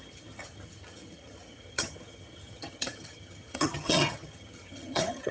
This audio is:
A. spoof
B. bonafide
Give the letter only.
A